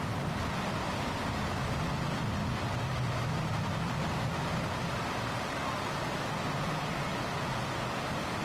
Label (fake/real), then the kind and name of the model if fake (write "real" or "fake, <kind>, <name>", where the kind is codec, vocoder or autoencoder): real